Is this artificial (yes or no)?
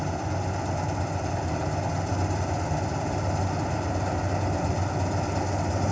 no